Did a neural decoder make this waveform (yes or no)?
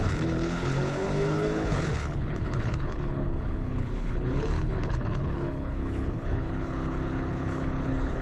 yes